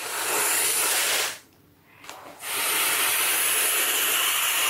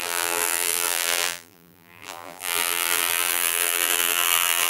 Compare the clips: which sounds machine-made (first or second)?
second